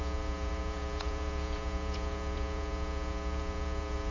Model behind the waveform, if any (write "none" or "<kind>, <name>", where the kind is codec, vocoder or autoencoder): vocoder, Vocos